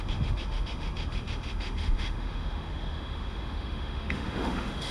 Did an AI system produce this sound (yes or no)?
yes